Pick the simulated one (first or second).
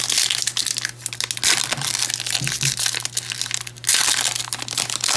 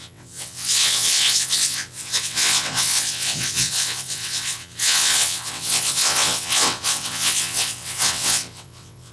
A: second